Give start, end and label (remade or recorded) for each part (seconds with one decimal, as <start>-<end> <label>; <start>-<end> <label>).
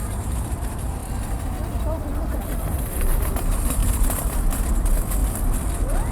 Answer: 0.0-1.0 remade; 1.0-2.7 recorded; 2.7-5.2 remade; 5.2-6.1 recorded